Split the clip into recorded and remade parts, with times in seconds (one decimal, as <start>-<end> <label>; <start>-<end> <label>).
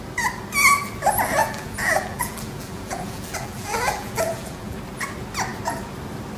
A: 0.0-1.4 recorded; 1.4-4.8 remade; 4.8-6.4 recorded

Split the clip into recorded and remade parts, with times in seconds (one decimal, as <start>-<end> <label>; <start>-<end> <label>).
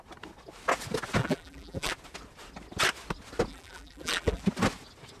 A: 0.0-1.2 recorded; 1.2-1.9 remade; 1.9-3.5 recorded; 3.5-4.4 remade; 4.4-5.2 recorded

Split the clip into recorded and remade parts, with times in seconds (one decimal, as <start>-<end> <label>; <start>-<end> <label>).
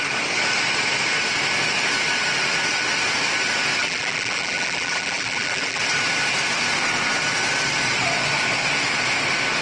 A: 0.0-3.8 recorded; 3.8-5.8 remade; 5.8-9.6 recorded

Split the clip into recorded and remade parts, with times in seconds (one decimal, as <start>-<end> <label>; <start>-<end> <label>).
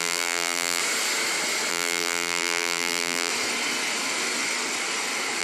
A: 0.0-0.8 remade; 0.8-1.7 recorded; 1.7-3.3 remade; 3.3-5.4 recorded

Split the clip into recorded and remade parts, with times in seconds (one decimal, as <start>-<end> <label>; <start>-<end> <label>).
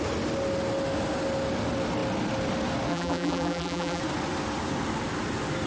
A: 0.0-2.9 recorded; 2.9-4.0 remade; 4.0-5.7 recorded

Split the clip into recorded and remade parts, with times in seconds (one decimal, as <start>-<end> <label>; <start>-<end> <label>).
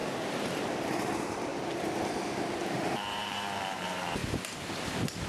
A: 0.0-0.8 recorded; 0.8-4.2 remade; 4.2-5.3 recorded